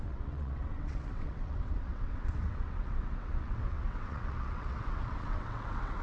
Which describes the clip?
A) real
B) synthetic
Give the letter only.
B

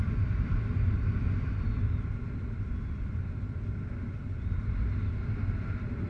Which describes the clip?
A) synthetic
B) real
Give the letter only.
B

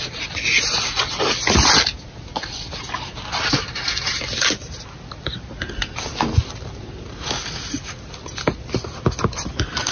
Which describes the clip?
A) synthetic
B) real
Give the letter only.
B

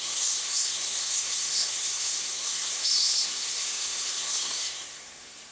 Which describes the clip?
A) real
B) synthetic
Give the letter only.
B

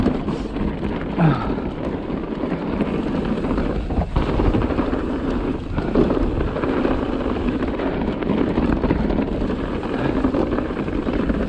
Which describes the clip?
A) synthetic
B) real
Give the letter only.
B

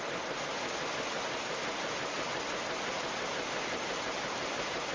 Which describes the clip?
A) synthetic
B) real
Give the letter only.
B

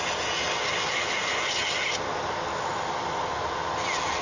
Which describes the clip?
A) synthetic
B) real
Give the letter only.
B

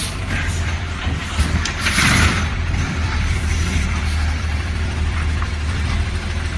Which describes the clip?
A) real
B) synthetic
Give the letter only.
B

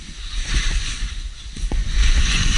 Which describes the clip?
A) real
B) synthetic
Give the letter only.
B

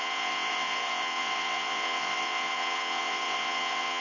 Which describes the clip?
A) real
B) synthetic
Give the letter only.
B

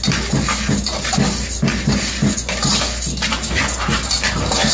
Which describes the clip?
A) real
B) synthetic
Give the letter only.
A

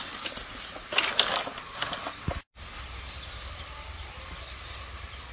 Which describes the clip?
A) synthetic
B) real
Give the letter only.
B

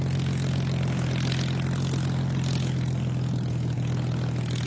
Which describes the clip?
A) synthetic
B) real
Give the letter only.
B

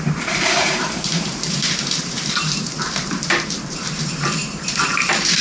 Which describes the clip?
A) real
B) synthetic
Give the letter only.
B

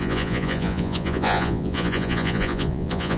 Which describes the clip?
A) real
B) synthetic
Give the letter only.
B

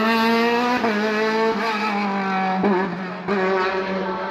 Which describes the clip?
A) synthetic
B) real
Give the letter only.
B